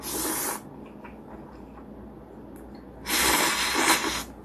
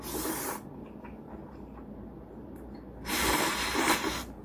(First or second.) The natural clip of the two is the first